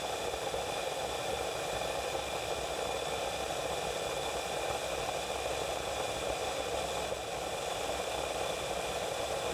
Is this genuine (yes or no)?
yes